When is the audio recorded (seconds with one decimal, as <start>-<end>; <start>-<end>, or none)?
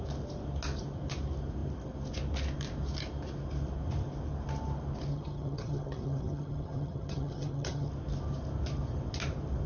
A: 0.0-5.1; 7.9-9.7